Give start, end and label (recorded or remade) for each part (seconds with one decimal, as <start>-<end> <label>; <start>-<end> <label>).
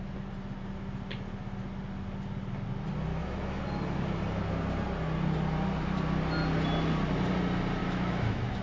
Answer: 0.0-3.1 recorded; 3.1-3.6 remade; 3.6-7.8 recorded; 7.8-8.6 remade